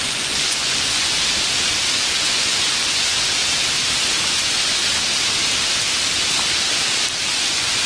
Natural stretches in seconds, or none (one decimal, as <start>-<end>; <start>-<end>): 1.2-1.9; 3.4-4.2; 4.8-7.3